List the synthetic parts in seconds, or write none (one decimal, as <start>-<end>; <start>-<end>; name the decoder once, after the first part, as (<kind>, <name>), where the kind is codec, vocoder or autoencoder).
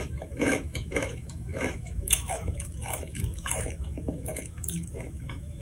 0.0-5.6 (autoencoder, DAC-VAE)